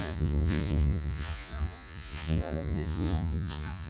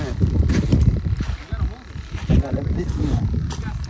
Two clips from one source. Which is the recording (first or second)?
second